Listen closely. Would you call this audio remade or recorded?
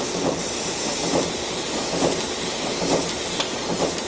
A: recorded